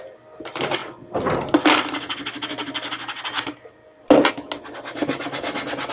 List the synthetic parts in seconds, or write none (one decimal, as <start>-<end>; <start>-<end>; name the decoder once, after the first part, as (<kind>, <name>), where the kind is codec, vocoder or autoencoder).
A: none